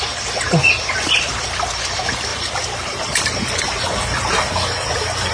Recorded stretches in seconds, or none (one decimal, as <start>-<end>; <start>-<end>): 0.0-2.3